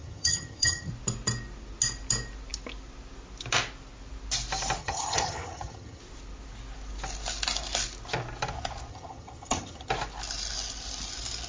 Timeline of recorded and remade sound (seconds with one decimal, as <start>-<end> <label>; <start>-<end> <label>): 0.0-0.9 remade; 0.9-4.8 recorded; 4.8-6.0 remade; 6.0-8.9 recorded; 8.9-9.9 remade; 9.9-11.5 recorded